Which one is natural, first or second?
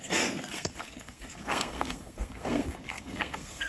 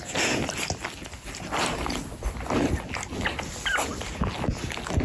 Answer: second